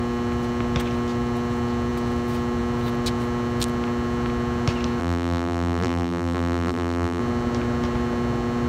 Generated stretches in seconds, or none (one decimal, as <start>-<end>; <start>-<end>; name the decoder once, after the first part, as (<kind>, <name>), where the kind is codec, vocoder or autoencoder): 5.0-7.2 (vocoder, BigVGAN v2)